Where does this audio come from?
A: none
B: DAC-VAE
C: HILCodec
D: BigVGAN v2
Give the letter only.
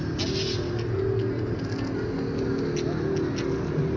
A